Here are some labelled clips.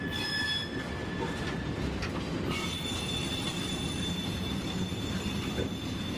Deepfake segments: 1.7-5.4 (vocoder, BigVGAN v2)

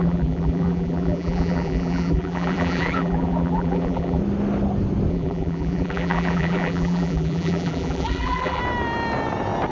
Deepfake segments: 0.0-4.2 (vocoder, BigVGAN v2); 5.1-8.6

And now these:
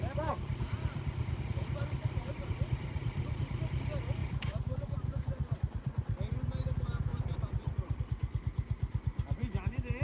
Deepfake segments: 1.6-2.3 (vocoder, BigVGAN v2); 4.2-4.9; 7.1-8.0